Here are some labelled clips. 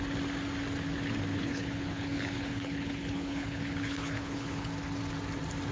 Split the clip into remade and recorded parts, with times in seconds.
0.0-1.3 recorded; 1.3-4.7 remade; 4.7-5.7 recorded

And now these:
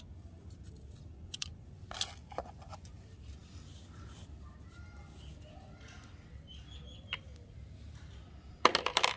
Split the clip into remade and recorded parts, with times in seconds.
0.0-1.1 recorded; 1.1-1.8 remade; 1.8-2.2 recorded; 2.2-3.0 remade; 3.0-9.2 recorded

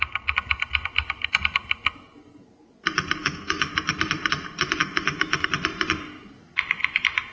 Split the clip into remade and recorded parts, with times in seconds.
0.0-3.2 recorded; 3.2-3.7 remade; 3.7-4.8 recorded; 4.8-5.5 remade; 5.5-7.3 recorded